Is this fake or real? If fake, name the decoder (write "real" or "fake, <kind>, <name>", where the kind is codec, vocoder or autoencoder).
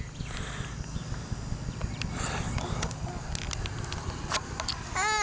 real